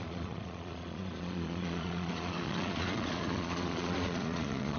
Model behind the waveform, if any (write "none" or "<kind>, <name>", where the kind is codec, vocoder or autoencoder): vocoder, Vocos